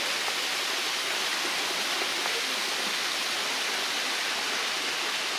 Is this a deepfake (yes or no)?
no